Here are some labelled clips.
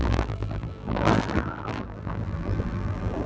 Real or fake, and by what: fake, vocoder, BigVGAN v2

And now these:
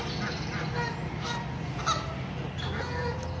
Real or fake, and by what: real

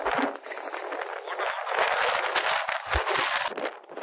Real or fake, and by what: real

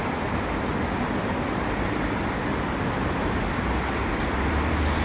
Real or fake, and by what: real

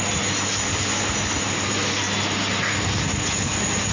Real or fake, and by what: real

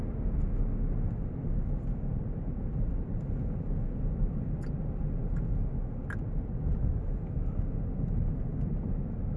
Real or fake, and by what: real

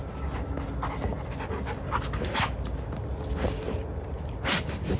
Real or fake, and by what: real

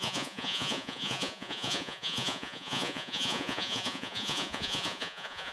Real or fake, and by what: fake, vocoder, Vocos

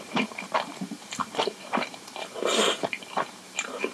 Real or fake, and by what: fake, vocoder, BigVGAN v2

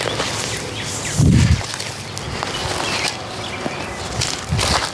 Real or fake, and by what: real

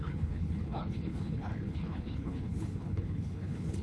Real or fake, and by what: fake, codec, HILCodec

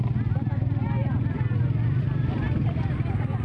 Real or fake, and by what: real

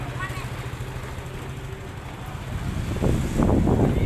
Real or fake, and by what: real